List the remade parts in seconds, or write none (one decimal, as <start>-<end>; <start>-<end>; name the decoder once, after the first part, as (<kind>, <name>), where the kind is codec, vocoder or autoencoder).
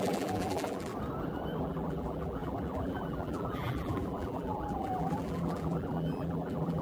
0.0-0.9 (vocoder, BigVGAN v2); 1.6-6.8